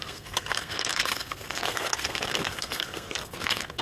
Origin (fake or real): fake